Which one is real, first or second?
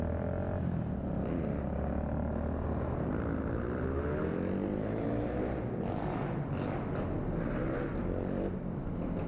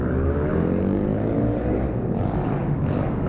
first